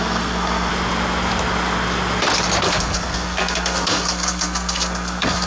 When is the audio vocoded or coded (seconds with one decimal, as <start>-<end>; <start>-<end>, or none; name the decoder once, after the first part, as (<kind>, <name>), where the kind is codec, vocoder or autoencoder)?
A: 0.0-0.7 (codec, SNAC); 2.6-5.5